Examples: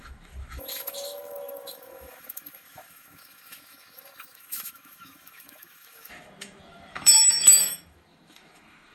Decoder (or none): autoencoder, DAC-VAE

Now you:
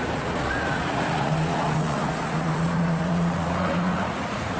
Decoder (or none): vocoder, Vocos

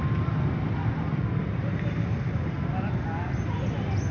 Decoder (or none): none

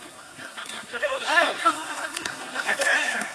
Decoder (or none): codec, SNAC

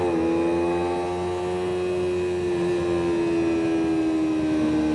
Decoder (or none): none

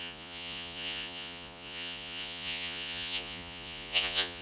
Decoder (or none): vocoder, Vocos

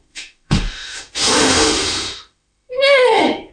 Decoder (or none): autoencoder, DAC-VAE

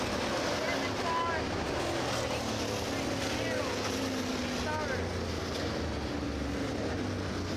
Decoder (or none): none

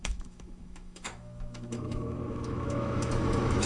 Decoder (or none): autoencoder, DAC-VAE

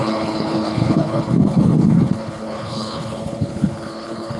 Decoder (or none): codec, HILCodec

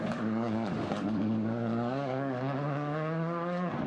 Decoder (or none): codec, DAC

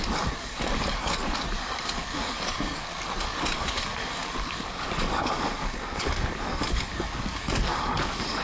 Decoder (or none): codec, DAC